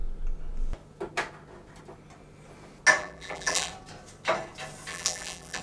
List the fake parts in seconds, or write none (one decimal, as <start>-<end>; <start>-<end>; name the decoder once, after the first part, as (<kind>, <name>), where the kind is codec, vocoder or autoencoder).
3.0-3.7 (vocoder, BigVGAN v2); 4.9-5.6

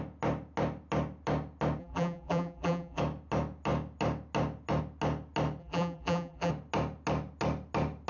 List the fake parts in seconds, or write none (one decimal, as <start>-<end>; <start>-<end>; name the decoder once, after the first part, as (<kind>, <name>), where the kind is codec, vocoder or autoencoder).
1.8-3.0 (vocoder, BigVGAN v2); 5.6-6.5

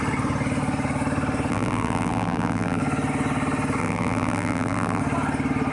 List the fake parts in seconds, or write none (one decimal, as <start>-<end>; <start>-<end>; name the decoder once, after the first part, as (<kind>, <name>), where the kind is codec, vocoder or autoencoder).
1.5-2.8 (vocoder, BigVGAN v2); 3.8-5.0

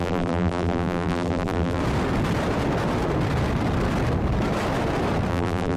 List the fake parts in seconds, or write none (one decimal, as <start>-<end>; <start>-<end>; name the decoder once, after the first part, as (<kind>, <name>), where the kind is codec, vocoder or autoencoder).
0.0-1.8 (vocoder, BigVGAN v2); 5.3-5.8

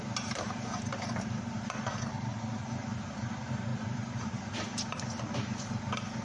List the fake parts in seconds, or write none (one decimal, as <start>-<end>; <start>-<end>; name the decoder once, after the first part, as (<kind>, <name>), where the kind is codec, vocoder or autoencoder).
0.0-2.3 (vocoder, BigVGAN v2); 3.1-6.2

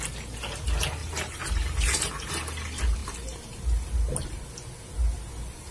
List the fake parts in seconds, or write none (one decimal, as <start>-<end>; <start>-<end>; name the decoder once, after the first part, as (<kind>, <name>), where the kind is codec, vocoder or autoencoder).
1.0-2.3 (vocoder, BigVGAN v2)

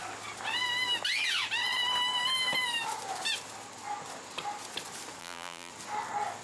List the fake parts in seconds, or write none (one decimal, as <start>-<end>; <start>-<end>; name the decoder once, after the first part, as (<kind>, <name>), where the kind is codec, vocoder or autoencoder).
5.2-5.7 (vocoder, BigVGAN v2)

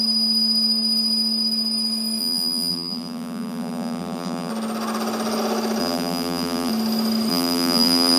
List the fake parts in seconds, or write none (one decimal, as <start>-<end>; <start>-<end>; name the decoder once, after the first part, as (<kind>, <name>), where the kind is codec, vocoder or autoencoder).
2.2-4.5 (vocoder, BigVGAN v2); 5.8-6.7; 7.3-8.2